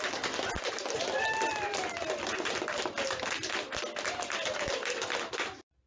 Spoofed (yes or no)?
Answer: no